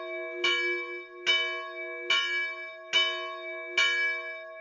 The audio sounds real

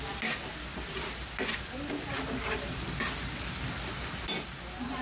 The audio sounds real